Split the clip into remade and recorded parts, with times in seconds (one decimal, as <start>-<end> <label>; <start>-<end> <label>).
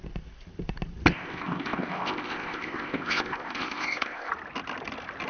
0.0-1.1 recorded; 1.1-4.3 remade; 4.3-5.3 recorded